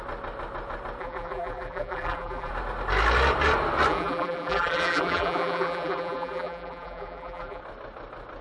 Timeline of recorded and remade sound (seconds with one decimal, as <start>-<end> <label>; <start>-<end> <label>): 0.0-1.0 recorded; 1.0-2.5 remade; 2.5-3.9 recorded; 3.9-7.6 remade; 7.6-8.4 recorded